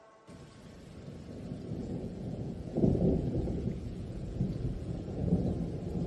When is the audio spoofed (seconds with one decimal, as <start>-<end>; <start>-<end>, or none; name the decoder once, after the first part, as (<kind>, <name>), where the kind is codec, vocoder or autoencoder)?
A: 1.8-5.5 (vocoder, Vocos)